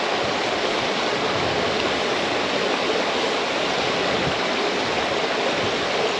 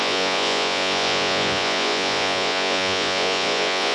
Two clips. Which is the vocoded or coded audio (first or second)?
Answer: second